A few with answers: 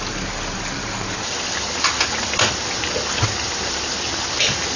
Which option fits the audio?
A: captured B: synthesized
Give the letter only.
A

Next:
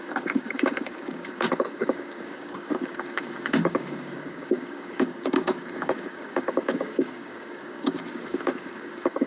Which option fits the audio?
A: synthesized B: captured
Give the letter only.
A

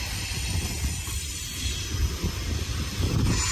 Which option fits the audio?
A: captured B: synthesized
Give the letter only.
B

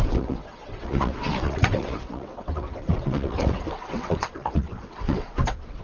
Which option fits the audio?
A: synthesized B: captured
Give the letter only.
A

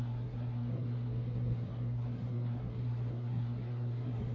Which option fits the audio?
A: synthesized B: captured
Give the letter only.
A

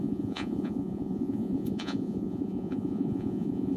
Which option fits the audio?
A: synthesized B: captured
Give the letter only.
A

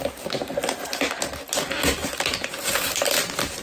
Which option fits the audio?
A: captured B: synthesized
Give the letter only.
A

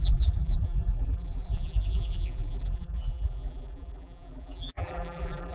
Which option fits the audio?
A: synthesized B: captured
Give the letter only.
A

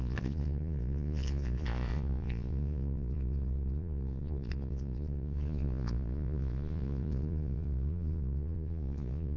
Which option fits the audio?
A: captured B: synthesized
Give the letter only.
B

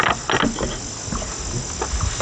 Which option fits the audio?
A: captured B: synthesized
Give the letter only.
A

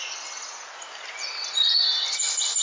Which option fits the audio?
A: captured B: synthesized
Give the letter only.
A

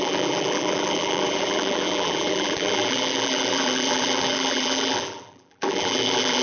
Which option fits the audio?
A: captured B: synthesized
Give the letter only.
B